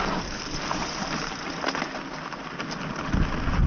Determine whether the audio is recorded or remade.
recorded